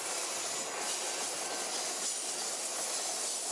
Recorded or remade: recorded